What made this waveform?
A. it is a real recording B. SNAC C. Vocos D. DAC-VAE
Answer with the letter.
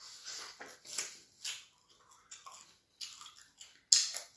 A